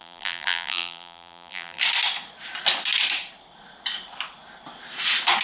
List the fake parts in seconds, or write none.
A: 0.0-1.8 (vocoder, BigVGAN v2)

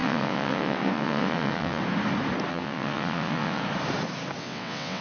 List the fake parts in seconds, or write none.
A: 0.0-1.8 (vocoder, WaveNeXt); 2.5-3.6; 4.4-5.0

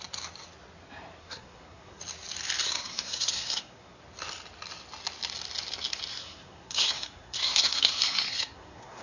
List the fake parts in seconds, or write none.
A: 1.2-2.0 (codec, SNAC); 2.6-4.0; 6.1-9.0

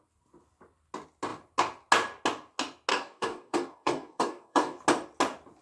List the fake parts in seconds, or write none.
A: 2.9-4.8 (codec, DAC)

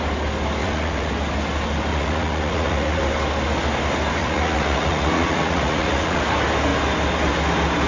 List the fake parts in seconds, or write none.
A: 0.6-1.1 (vocoder, Vocos); 1.9-3.0; 4.2-6.2